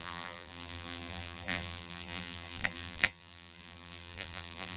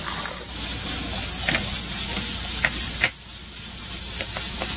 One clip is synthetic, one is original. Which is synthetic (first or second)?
first